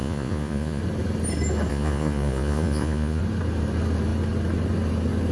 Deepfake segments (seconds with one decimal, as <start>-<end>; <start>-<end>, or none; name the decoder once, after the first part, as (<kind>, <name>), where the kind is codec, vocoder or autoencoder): 0.0-0.8 (vocoder, Vocos); 1.7-3.2